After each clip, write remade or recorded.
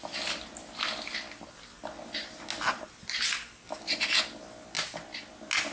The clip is recorded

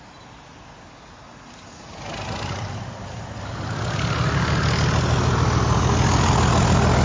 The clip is recorded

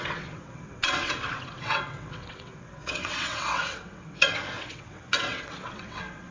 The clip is remade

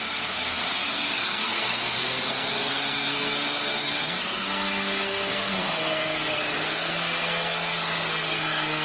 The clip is remade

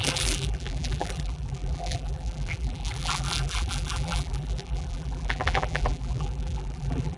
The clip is remade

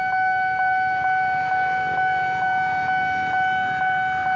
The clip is recorded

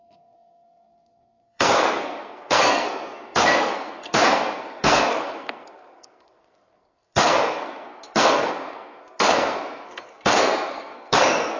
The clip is remade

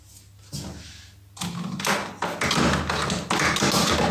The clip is recorded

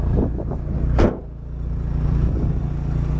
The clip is recorded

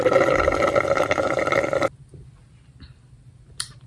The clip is recorded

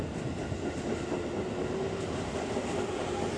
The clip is recorded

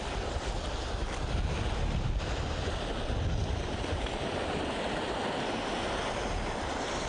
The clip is recorded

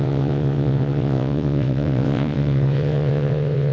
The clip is remade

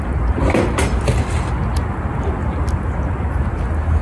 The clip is recorded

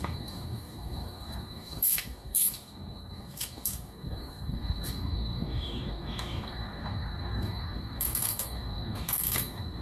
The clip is remade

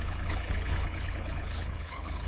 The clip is remade